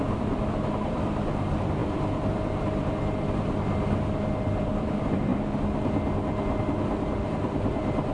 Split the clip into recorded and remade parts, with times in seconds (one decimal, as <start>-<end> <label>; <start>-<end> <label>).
0.0-5.3 remade; 5.3-6.6 recorded; 6.6-8.1 remade